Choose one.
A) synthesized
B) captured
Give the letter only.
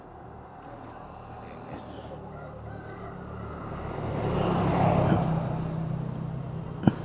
B